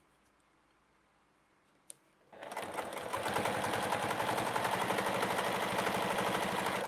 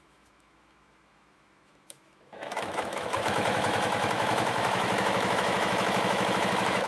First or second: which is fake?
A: second